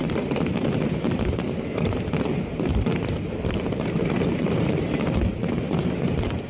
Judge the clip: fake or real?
fake